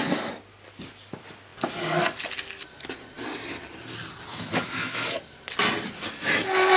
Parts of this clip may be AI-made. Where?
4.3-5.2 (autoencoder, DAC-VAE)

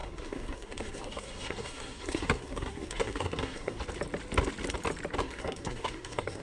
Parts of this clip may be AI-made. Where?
0.0-3.8 (codec, SNAC); 5.2-6.4

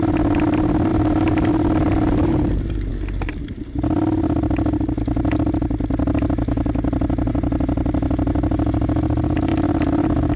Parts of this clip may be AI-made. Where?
none

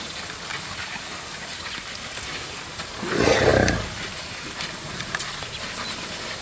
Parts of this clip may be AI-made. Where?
none